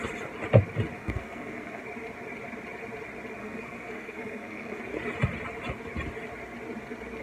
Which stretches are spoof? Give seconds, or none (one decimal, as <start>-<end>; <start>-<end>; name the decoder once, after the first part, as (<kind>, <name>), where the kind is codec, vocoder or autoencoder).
1.0-1.8 (codec, SNAC); 3.4-4.8